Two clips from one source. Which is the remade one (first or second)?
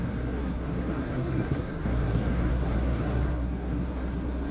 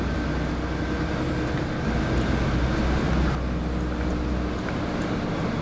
first